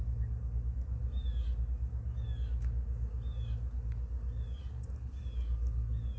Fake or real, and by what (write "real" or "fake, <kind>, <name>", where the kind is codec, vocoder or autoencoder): real